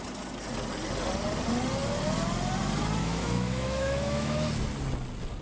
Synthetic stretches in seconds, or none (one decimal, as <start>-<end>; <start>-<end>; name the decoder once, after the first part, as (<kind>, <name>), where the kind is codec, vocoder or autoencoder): 3.0-4.5 (autoencoder, DAC-VAE)